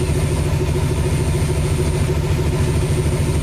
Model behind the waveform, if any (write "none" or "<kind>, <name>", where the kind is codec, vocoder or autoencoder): none